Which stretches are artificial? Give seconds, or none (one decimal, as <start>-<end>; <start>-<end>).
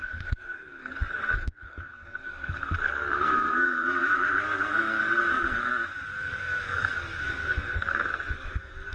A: 0.0-5.7; 6.2-8.9